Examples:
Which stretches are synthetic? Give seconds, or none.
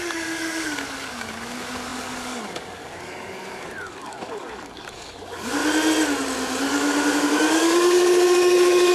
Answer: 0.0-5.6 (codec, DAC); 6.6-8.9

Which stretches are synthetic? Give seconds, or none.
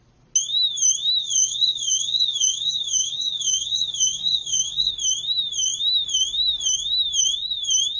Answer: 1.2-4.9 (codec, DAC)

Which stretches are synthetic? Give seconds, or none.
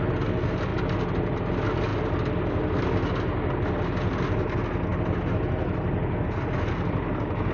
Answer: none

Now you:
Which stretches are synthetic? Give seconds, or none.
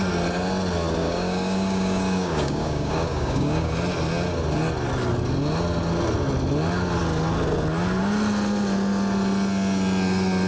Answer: 1.0-3.7 (codec, DAC)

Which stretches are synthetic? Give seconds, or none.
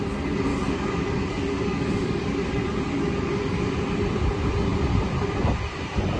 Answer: 0.5-3.7 (codec, DAC)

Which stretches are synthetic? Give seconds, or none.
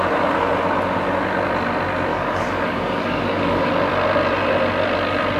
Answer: 2.1-3.7 (codec, DAC)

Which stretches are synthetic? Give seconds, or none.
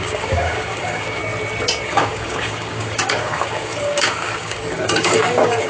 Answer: 0.0-1.2 (codec, DAC); 1.8-5.7